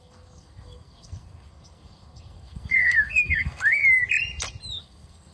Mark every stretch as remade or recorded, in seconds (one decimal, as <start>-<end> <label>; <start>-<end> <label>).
0.0-3.8 remade; 3.8-4.8 recorded; 4.8-5.3 remade

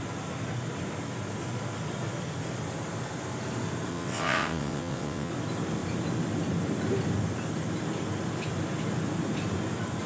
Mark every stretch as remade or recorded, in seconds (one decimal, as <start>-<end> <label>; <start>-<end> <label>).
0.0-3.9 recorded; 3.9-5.3 remade; 5.3-10.1 recorded

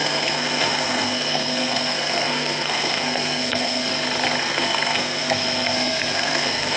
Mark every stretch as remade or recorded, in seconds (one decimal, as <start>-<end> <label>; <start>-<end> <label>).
0.0-3.9 remade; 3.9-4.4 recorded; 4.4-6.8 remade